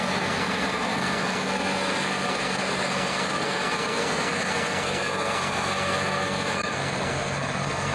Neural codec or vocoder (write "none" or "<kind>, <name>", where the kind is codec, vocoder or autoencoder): codec, SNAC